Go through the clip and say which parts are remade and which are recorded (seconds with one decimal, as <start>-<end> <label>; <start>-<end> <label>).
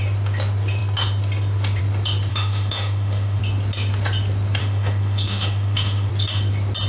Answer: 0.0-2.3 recorded; 2.3-3.4 remade; 3.4-4.6 recorded; 4.6-6.1 remade; 6.1-6.9 recorded